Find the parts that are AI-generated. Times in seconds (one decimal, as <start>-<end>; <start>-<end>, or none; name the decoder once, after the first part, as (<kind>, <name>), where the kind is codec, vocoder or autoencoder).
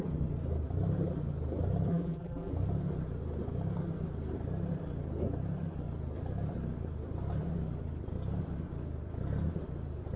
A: 1.9-2.5 (vocoder, BigVGAN v2)